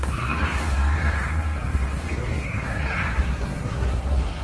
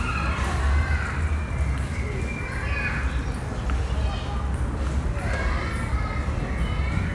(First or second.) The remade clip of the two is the first